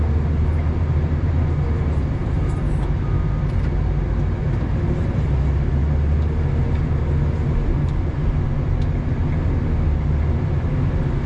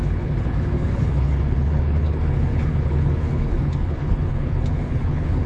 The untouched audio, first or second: first